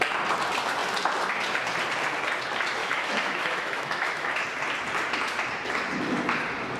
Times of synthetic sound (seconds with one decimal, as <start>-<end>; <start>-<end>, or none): 2.8-4.3